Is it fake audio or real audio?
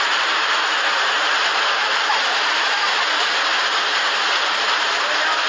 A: real